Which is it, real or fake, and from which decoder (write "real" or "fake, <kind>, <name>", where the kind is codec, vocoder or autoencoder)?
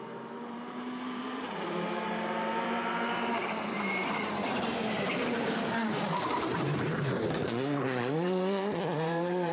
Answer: fake, vocoder, BigVGAN v2